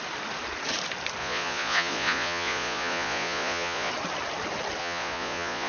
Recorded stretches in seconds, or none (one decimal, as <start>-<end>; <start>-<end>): 0.0-1.2; 3.9-4.8